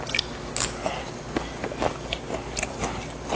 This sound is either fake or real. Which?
real